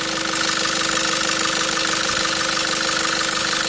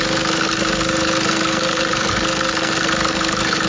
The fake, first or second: second